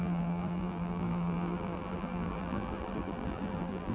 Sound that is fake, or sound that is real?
fake